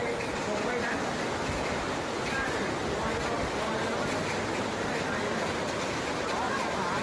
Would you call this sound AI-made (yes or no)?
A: no